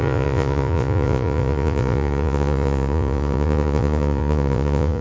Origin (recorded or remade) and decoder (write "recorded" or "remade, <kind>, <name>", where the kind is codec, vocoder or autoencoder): remade, vocoder, Vocos